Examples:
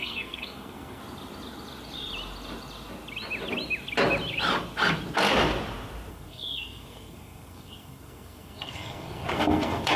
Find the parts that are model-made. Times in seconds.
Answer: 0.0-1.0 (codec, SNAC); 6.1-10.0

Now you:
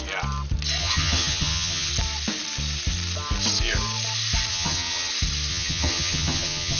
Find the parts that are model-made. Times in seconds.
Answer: 0.8-1.9 (vocoder, HiFi-GAN); 4.5-5.1; 5.5-6.8

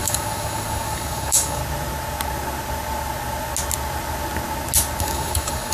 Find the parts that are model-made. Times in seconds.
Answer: 0.0-1.6 (codec, DAC); 5.0-5.7

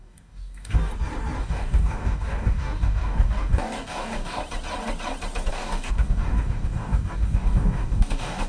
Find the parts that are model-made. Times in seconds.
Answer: 0.0-0.9 (codec, DAC); 1.4-4.4; 5.5-8.5

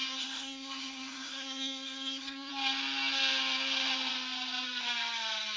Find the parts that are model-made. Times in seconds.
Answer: 0.0-2.5 (codec, SNAC)

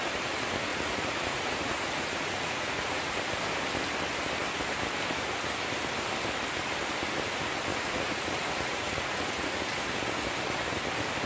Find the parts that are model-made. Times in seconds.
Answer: 0.7-3.1 (vocoder, Vocos); 7.7-9.6

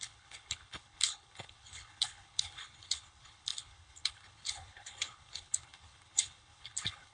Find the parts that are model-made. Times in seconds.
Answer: 0.0-7.1 (codec, HILCodec)

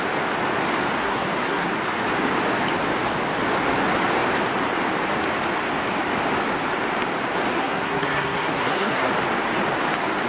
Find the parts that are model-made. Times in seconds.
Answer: 1.0-1.7 (codec, SNAC); 7.5-9.1